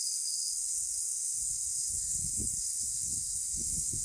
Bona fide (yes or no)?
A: no